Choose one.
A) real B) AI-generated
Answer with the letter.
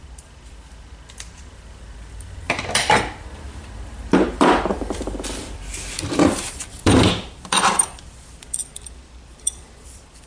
B